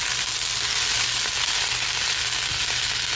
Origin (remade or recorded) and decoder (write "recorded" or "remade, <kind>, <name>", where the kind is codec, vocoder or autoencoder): recorded